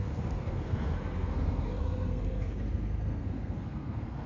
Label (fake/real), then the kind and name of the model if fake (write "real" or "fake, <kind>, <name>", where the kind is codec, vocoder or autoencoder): fake, codec, SNAC